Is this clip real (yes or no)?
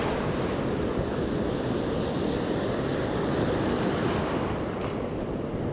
yes